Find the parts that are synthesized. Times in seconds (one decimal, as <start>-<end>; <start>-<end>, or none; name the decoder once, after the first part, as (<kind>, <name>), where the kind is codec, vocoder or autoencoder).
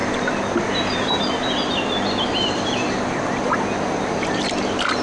none